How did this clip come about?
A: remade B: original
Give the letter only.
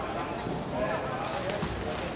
B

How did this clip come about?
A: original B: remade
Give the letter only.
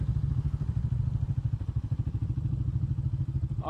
A